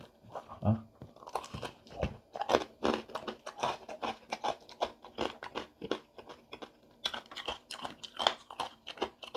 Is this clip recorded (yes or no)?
yes